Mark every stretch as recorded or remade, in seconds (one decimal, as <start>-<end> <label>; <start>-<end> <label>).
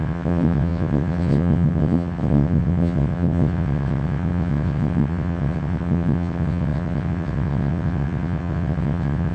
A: 0.0-9.3 remade